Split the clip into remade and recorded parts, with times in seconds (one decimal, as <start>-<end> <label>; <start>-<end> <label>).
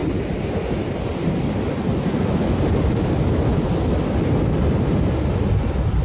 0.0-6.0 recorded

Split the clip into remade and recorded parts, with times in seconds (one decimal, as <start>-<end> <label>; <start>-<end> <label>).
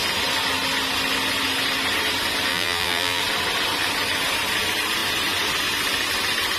0.0-2.5 recorded; 2.5-3.2 remade; 3.2-6.6 recorded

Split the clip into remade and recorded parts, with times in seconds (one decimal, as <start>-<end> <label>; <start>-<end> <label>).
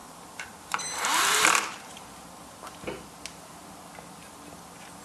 0.0-3.0 remade; 3.0-5.0 recorded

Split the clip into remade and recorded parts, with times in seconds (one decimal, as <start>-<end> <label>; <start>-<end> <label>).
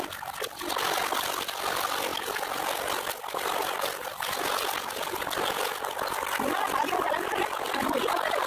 0.0-2.1 recorded; 2.1-4.4 remade; 4.4-8.5 recorded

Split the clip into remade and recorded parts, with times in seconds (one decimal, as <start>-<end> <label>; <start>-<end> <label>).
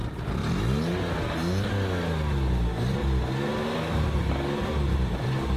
0.0-3.4 recorded; 3.4-5.6 remade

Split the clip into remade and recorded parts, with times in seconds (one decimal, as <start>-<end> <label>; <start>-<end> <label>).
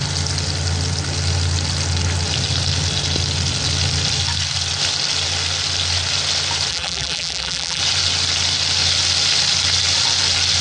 0.0-6.7 recorded; 6.7-7.8 remade; 7.8-10.6 recorded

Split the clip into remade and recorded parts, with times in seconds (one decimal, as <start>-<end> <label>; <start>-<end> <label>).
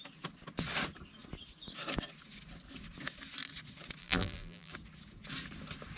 0.0-4.0 recorded; 4.0-4.7 remade; 4.7-6.0 recorded